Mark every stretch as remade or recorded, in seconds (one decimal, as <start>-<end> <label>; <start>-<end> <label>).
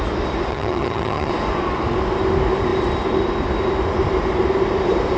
0.0-0.5 recorded; 0.5-1.3 remade; 1.3-5.2 recorded